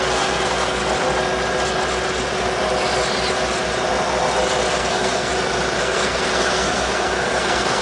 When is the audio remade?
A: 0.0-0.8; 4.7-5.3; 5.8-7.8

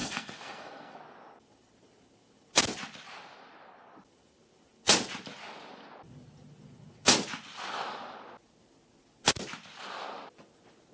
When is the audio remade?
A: 0.0-1.0

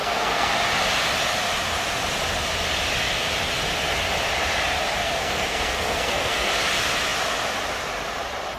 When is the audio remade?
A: 0.0-0.5; 5.0-6.5

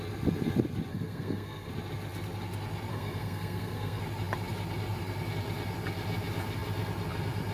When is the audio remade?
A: 0.9-1.7; 2.9-4.0

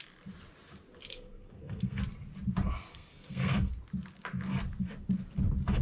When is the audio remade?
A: 1.1-2.0; 2.9-3.7

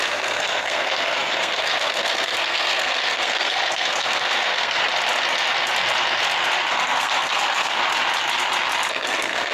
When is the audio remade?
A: 0.0-4.8; 6.7-7.8; 8.9-9.5

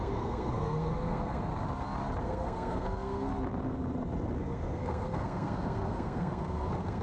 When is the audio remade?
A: 0.0-1.5; 2.2-3.3; 4.4-7.0